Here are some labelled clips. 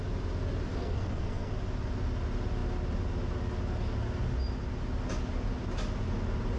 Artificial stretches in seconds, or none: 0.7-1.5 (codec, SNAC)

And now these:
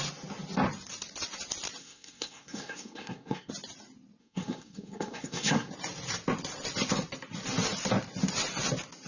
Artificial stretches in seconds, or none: 1.8-3.5 (codec, SNAC); 4.2-5.7

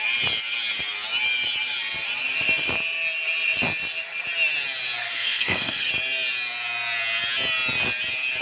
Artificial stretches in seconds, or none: 5.0-5.9 (codec, SNAC)